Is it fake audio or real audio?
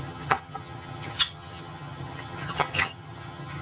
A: fake